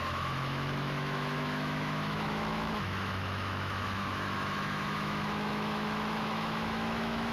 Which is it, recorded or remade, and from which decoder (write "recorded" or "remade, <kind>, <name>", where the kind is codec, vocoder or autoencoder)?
remade, autoencoder, DAC-VAE